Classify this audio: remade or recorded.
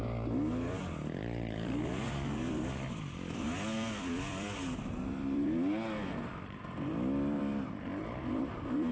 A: remade